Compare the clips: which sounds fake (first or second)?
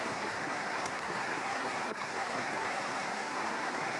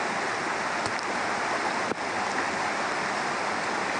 first